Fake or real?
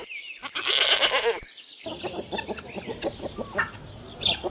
real